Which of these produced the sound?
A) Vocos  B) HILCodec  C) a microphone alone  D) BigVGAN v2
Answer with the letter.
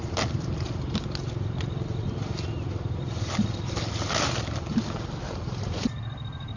C